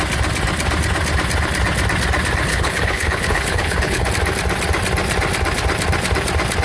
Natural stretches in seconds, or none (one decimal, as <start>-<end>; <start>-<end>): 0.0-2.5; 4.1-6.6